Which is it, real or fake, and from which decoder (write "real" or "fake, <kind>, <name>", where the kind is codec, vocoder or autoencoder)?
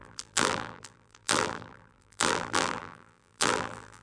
fake, vocoder, BigVGAN v2